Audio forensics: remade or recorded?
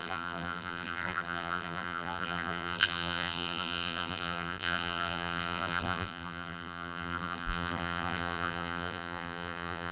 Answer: remade